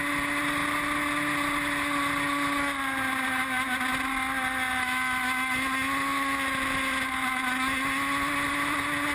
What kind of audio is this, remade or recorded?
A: recorded